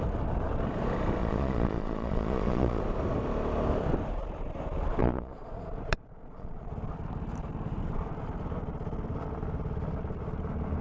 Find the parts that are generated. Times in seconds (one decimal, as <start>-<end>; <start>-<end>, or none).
1.2-2.8; 5.0-5.5; 5.9-6.7